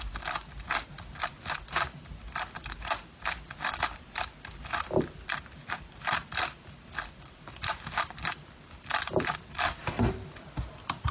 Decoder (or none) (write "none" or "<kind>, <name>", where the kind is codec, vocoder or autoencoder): none